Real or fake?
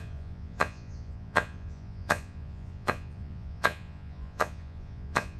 fake